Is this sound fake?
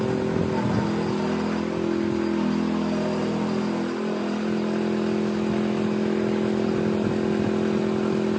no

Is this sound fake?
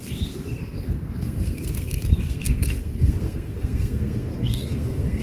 yes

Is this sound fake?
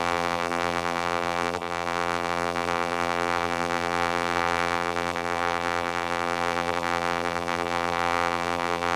yes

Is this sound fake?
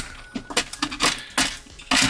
no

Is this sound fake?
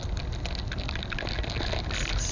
no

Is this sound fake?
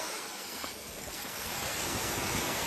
yes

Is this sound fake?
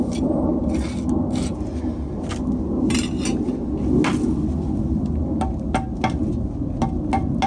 no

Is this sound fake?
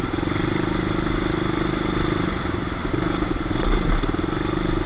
no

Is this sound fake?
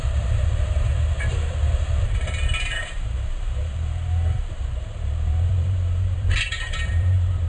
yes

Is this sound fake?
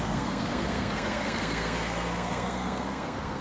yes